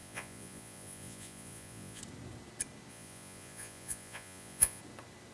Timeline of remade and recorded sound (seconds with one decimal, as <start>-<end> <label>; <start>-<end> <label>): 0.0-2.0 remade; 2.0-2.9 recorded; 2.9-4.8 remade; 4.8-5.3 recorded